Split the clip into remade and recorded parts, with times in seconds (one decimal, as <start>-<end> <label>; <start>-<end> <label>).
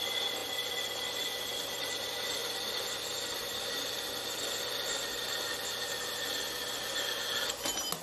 0.0-8.0 recorded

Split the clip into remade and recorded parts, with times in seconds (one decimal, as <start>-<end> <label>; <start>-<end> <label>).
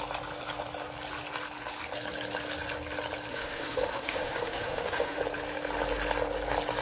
0.0-3.3 recorded; 3.3-5.2 remade; 5.2-6.8 recorded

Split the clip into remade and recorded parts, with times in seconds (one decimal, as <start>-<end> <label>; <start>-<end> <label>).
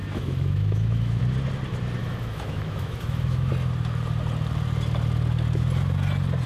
0.0-1.2 remade; 1.2-2.0 recorded; 2.0-3.5 remade; 3.5-6.5 recorded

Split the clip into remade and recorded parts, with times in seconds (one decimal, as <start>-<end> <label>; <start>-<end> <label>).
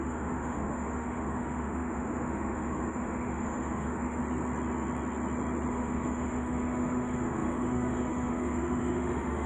0.0-4.2 remade; 4.2-5.7 recorded; 5.7-9.5 remade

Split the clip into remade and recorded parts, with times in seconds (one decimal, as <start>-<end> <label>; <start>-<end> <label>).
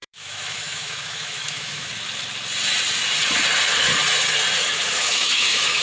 0.0-1.9 remade; 1.9-4.6 recorded; 4.6-5.8 remade